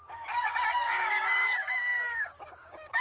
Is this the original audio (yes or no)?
no